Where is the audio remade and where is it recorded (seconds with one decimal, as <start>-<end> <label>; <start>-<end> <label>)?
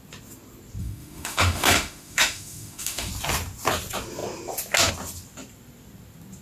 0.0-0.8 recorded; 0.8-3.1 remade; 3.1-6.4 recorded